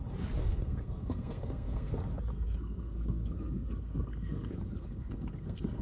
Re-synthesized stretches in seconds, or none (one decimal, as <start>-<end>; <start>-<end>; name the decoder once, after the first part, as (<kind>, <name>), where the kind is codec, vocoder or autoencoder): 0.4-1.9 (codec, SNAC); 2.3-5.8